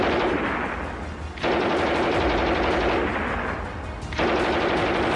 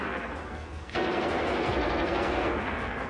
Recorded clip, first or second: first